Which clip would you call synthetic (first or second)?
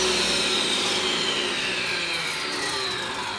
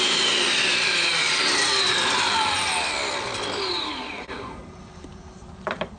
second